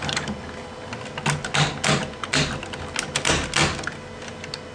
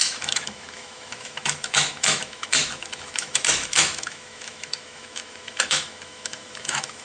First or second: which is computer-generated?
second